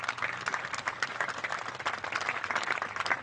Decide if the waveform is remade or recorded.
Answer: recorded